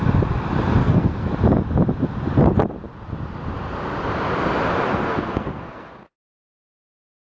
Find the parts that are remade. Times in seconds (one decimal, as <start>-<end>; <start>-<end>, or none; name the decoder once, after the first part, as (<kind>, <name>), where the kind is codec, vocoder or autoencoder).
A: 0.8-1.3 (codec, SNAC); 4.9-5.9